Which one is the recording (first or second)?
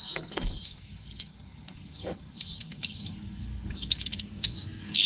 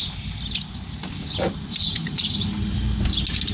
second